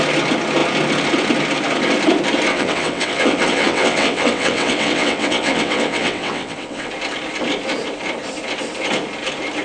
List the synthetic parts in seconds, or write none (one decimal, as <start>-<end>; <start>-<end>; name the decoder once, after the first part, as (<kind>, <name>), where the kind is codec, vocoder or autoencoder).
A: 2.5-6.9 (vocoder, WaveNeXt)

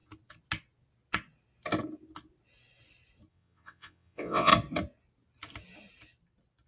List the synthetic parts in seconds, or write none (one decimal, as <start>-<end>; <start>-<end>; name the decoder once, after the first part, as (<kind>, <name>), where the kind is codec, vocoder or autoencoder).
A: 3.3-4.5 (vocoder, WaveNeXt)

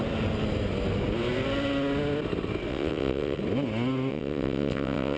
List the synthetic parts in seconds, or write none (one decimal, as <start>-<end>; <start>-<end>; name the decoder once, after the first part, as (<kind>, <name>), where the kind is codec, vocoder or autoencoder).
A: 2.7-3.4 (vocoder, WaveNeXt); 4.1-5.2

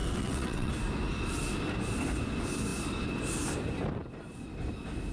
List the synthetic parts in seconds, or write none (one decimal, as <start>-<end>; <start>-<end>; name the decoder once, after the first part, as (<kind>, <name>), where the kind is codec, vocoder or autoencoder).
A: 0.0-0.7 (vocoder, WaveNeXt)

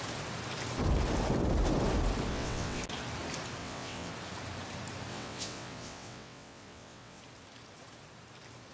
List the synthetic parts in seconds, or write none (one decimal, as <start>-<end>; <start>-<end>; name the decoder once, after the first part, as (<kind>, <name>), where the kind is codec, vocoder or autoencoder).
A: 2.3-2.8 (vocoder, WaveNeXt); 3.6-4.1; 5.1-7.2